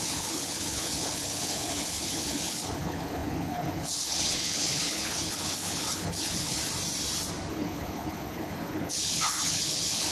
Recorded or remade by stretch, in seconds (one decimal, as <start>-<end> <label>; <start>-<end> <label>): 0.0-6.6 remade; 6.6-7.5 recorded; 7.5-10.1 remade